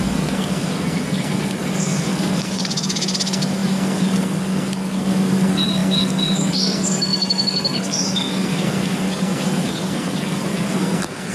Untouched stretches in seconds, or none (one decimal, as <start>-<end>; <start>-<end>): none